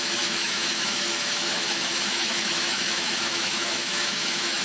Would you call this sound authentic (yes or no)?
no